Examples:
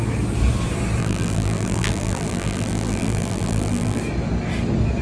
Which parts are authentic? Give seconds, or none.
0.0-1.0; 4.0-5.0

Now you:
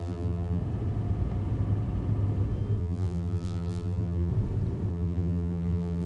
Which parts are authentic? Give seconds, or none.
0.6-2.8; 4.3-4.9

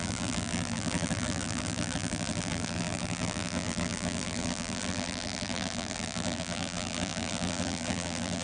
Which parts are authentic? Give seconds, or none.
none

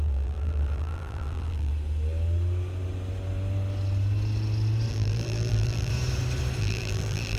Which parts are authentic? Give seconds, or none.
1.7-4.9; 5.9-6.6

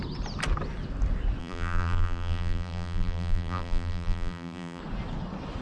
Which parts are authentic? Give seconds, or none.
0.0-1.4; 4.8-5.6

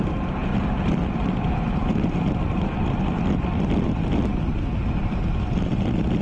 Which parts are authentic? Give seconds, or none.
0.0-6.2